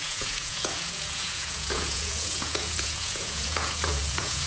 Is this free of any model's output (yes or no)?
no